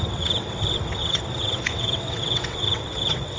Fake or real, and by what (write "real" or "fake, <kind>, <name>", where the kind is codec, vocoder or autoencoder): fake, vocoder, WaveNeXt